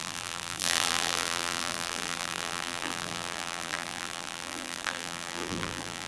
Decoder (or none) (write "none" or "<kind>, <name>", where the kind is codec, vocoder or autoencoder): vocoder, BigVGAN v2